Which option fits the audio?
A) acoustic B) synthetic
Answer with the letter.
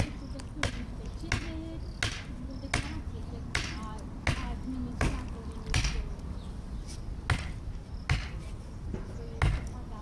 A